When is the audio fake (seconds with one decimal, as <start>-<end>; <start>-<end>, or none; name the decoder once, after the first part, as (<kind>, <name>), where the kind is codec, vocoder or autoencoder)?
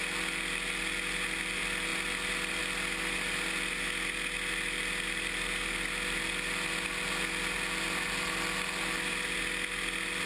none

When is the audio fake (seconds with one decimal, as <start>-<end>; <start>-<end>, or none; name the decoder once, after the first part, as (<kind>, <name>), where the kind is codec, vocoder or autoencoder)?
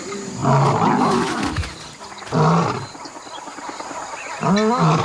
none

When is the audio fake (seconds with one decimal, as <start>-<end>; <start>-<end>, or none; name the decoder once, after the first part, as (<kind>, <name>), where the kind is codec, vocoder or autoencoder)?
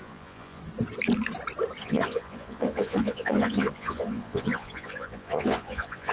0.0-0.6 (vocoder, Vocos); 1.8-6.1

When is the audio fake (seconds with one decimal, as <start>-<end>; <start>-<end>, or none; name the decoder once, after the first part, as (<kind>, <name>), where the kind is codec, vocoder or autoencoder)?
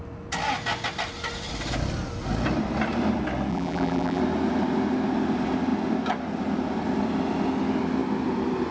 3.5-4.2 (vocoder, BigVGAN v2)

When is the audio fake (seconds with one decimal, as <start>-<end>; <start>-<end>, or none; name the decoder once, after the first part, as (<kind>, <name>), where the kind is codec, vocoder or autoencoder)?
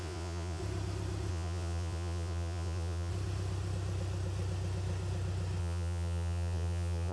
0.0-0.6 (vocoder, Vocos); 1.3-3.1; 5.6-7.1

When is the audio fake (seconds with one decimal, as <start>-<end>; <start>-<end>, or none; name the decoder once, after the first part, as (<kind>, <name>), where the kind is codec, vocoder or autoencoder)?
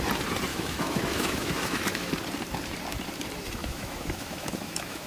0.5-2.1 (autoencoder, DAC-VAE); 3.6-5.1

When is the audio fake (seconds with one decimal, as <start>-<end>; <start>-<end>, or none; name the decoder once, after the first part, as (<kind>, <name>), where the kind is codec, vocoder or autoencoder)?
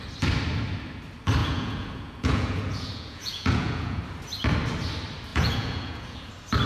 1.4-4.0 (vocoder, Vocos); 5.3-6.3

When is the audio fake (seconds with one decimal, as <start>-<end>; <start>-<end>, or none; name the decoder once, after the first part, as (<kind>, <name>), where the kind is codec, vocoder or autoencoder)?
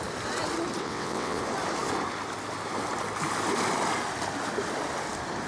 0.8-1.4 (vocoder, WaveNeXt)